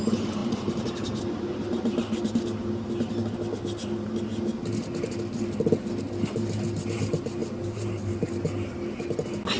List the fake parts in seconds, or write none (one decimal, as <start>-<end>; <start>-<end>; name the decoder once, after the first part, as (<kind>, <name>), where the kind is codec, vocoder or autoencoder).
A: none